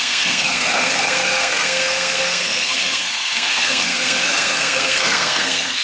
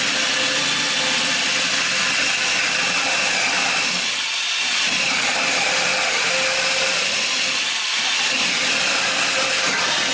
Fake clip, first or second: first